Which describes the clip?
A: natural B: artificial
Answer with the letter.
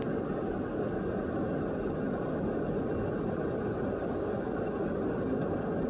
A